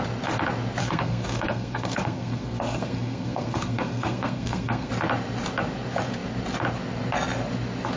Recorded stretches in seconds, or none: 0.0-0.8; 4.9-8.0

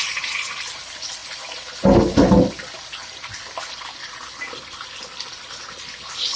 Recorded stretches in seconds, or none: 0.0-6.4

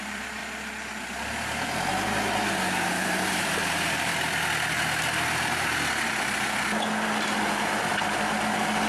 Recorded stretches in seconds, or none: 0.4-2.9; 4.1-8.9

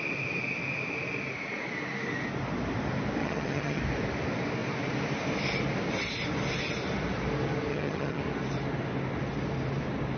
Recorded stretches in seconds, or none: 0.0-3.2; 3.8-7.7; 8.2-10.2

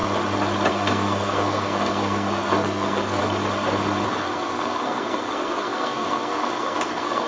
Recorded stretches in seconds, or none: 0.0-0.7; 3.2-4.1

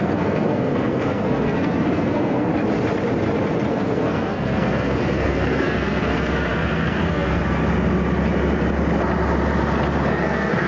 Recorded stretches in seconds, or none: 2.5-3.7; 7.6-10.1